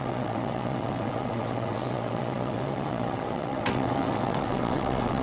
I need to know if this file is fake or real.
fake